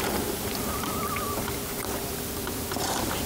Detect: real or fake real